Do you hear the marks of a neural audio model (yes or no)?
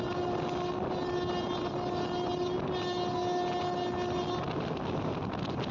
no